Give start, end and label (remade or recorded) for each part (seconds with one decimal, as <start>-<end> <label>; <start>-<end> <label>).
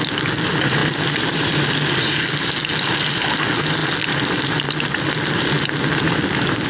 0.0-6.7 recorded